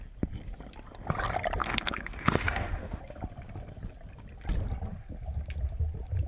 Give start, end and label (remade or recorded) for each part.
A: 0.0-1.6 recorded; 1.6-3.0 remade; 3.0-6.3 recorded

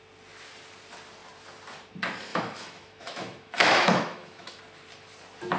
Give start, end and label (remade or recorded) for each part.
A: 0.0-2.3 recorded; 2.3-4.6 remade; 4.6-5.6 recorded

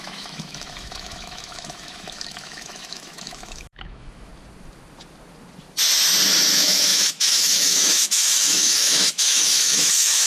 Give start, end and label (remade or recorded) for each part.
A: 0.0-4.3 remade; 4.3-6.5 recorded; 6.5-10.3 remade

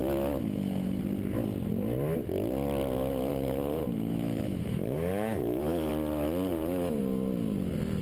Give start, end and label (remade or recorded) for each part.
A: 0.0-1.0 remade; 1.0-3.3 recorded; 3.3-5.9 remade; 5.9-6.5 recorded; 6.5-7.0 remade; 7.0-8.0 recorded

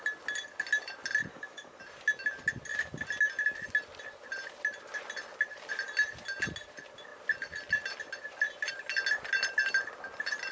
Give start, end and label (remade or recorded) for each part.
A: 0.0-1.3 recorded; 1.3-1.8 remade; 1.8-10.5 recorded

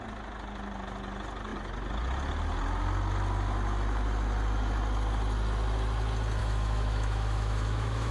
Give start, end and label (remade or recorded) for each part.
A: 0.0-6.4 recorded; 6.4-8.1 remade

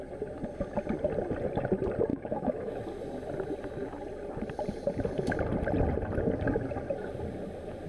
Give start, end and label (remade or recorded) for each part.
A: 0.0-2.1 recorded; 2.1-2.7 remade; 2.7-7.9 recorded